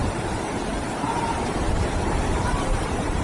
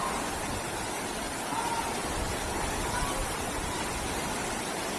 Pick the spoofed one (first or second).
first